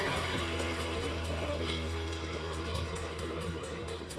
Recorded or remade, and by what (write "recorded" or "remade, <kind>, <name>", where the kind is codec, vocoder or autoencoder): remade, codec, SNAC